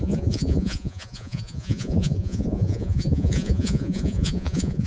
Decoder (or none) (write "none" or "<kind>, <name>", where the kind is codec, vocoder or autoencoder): vocoder, Vocos